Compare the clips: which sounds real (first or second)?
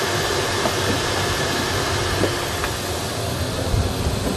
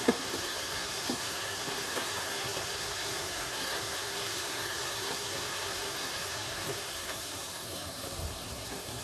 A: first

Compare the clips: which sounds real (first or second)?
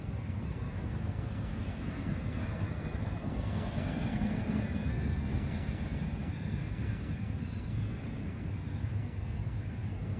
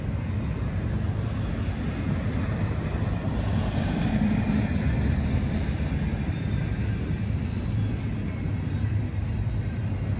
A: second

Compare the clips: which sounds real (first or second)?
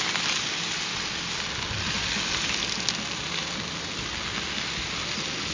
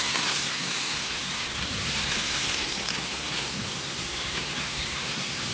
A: first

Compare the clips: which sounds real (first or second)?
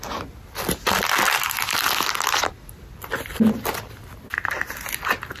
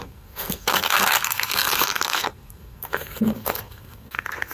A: first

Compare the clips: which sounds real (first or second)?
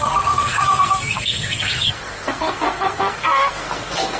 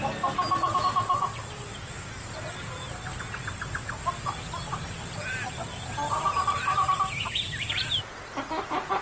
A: second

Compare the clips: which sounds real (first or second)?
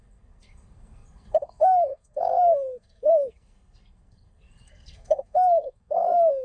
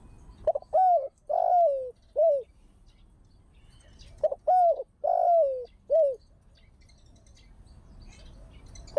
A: second